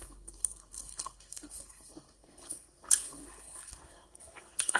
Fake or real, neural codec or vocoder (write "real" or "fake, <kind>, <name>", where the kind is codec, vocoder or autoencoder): fake, codec, SNAC